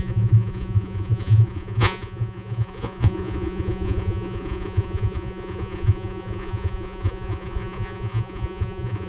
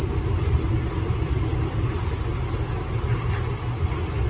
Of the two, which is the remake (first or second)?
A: first